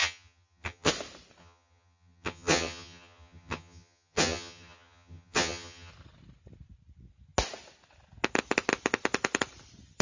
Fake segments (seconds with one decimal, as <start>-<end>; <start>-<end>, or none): 0.0-0.9; 1.4-5.9